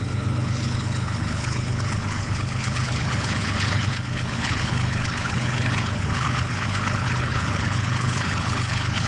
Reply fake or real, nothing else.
fake